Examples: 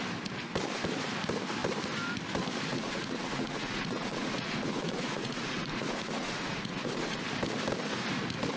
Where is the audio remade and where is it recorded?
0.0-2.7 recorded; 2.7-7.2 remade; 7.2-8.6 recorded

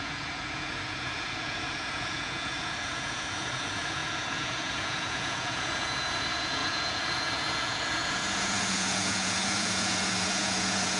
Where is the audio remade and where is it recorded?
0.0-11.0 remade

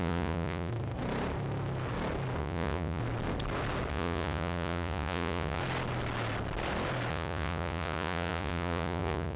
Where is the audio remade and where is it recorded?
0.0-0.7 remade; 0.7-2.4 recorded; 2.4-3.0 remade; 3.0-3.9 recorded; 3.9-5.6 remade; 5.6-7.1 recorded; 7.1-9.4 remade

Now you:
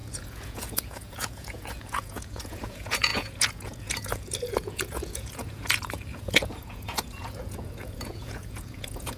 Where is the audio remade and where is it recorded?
0.0-9.2 remade

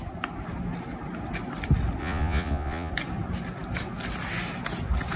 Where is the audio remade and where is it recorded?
0.0-2.0 recorded; 2.0-2.9 remade; 2.9-5.2 recorded

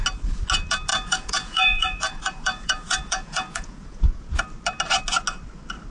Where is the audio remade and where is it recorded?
0.0-0.9 recorded; 0.9-4.4 remade; 4.4-5.9 recorded

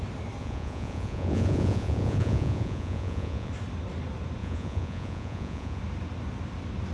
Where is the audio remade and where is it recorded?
0.0-0.4 recorded; 0.4-3.5 remade; 3.5-4.4 recorded; 4.4-5.8 remade; 5.8-6.9 recorded

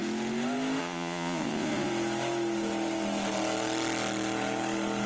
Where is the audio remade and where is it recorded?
0.0-0.8 recorded; 0.8-1.9 remade; 1.9-5.1 recorded